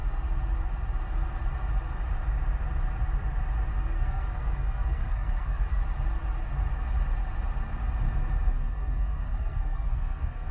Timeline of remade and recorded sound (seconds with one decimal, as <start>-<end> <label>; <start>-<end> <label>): 0.0-3.7 recorded; 3.7-5.8 remade; 5.8-8.6 recorded; 8.6-10.5 remade